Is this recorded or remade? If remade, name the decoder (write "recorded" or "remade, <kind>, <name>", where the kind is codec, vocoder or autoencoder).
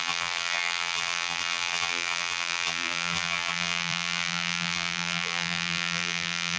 remade, vocoder, BigVGAN v2